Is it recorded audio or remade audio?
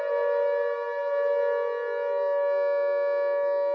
recorded